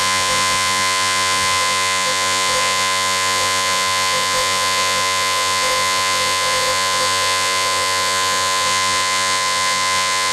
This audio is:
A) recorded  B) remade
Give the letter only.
B